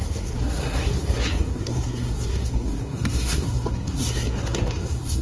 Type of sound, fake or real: fake